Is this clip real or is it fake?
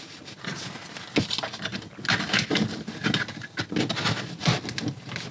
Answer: real